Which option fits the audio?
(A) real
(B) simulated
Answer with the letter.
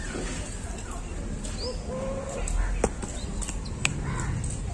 A